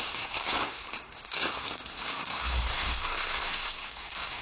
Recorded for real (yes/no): no